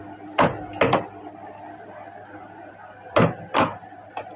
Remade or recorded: recorded